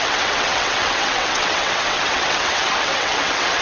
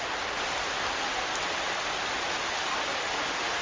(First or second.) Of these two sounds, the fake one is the first